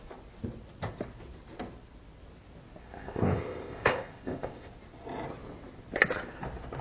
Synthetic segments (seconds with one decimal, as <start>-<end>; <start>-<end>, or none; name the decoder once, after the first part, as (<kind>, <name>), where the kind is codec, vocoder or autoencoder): 2.8-4.7 (codec, ZipCodec)